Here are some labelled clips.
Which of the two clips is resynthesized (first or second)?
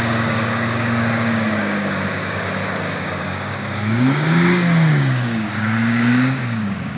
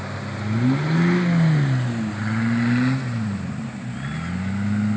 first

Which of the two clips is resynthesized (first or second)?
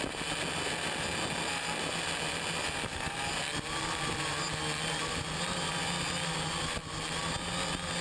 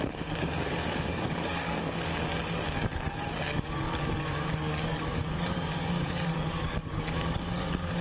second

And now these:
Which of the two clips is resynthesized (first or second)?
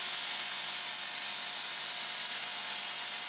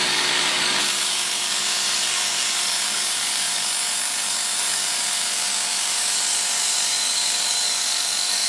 second